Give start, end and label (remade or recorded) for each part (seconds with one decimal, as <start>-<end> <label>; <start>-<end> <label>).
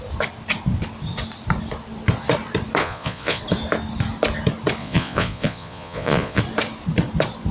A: 0.0-2.8 recorded; 2.8-3.4 remade; 3.4-4.8 recorded; 4.8-6.4 remade; 6.4-7.5 recorded